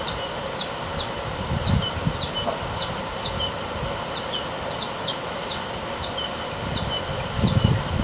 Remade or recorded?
recorded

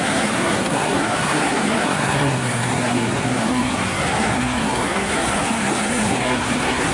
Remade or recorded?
remade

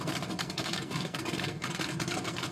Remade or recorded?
remade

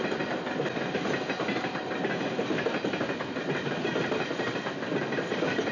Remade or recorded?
recorded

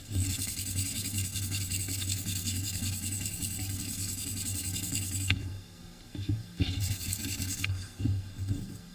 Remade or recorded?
remade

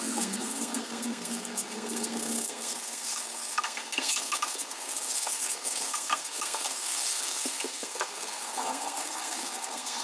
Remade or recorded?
remade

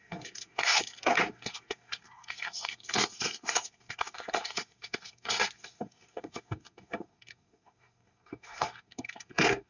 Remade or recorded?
remade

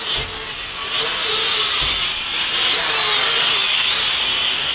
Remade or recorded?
recorded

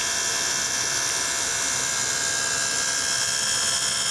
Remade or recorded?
recorded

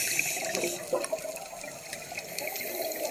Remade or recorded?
recorded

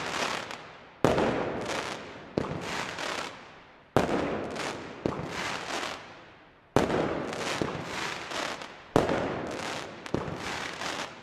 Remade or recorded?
recorded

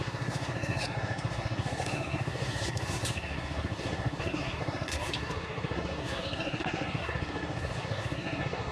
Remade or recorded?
remade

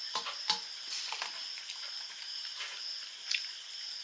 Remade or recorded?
recorded